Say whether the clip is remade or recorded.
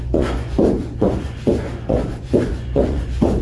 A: remade